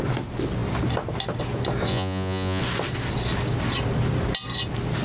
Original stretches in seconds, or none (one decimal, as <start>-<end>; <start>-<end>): 0.0-1.9; 2.6-5.0